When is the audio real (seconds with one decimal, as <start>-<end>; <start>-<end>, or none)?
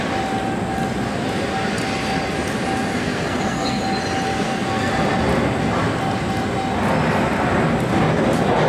0.0-2.9; 3.8-4.3; 4.9-8.7